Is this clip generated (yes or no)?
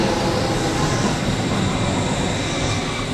no